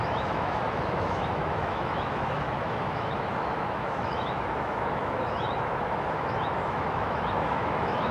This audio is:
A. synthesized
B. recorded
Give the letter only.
A